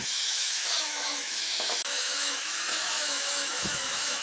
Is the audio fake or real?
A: fake